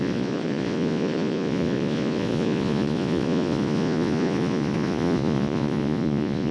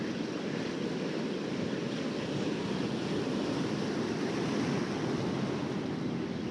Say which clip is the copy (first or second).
first